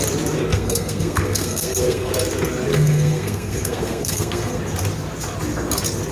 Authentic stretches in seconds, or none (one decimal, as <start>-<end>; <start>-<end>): 0.0-0.5; 2.1-2.7; 4.6-6.1

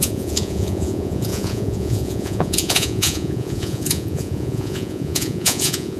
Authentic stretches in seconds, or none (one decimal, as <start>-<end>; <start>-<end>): none

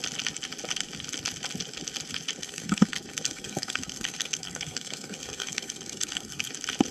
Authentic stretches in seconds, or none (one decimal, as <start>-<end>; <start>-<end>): 0.0-2.4; 6.5-6.9

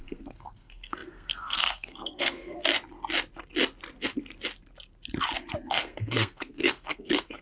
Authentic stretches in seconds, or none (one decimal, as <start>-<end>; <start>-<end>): 2.7-5.7